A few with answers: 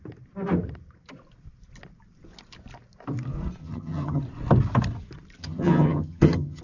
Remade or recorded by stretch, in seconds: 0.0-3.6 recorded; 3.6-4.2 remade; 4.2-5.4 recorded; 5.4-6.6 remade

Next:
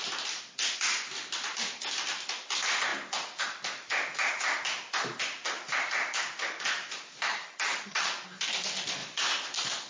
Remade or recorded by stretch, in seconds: 0.0-7.3 recorded; 7.3-8.1 remade; 8.1-9.9 recorded

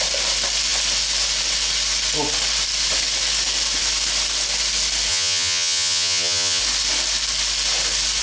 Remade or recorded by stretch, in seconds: 0.0-5.1 recorded; 5.1-6.6 remade; 6.6-8.2 recorded

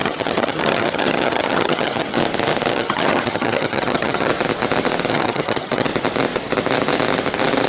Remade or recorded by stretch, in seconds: 0.0-2.2 remade; 2.2-2.7 recorded; 2.7-4.3 remade; 4.3-5.1 recorded; 5.1-5.9 remade; 5.9-7.7 recorded

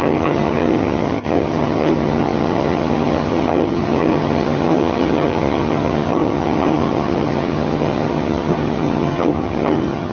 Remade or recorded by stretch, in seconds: 0.0-10.1 remade

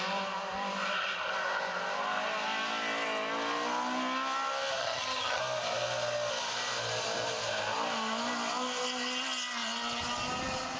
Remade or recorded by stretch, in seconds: 0.0-4.8 recorded; 4.8-5.4 remade; 5.4-10.8 recorded

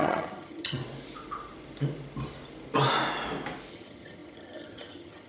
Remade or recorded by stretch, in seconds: 0.0-0.8 remade; 0.8-3.7 recorded; 3.7-5.3 remade